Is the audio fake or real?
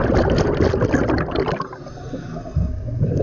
real